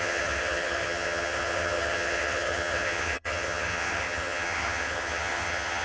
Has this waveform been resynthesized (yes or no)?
yes